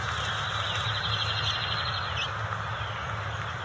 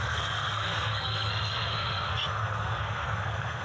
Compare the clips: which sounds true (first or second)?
first